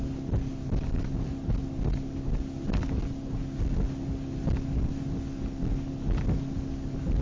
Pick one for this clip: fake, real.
real